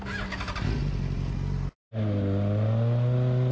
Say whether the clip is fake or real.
real